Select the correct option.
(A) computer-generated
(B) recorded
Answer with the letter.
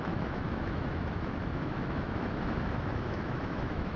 A